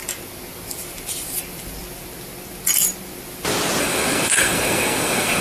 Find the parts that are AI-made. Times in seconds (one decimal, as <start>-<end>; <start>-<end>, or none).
3.8-5.4